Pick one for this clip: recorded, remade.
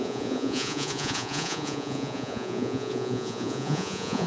remade